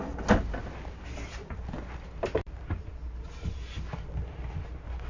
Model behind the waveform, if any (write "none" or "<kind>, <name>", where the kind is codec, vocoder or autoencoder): none